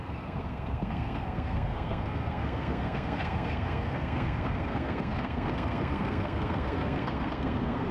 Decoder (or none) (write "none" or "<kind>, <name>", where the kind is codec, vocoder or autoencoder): codec, SNAC